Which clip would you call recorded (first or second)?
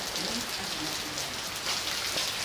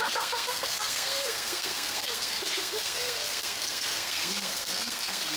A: first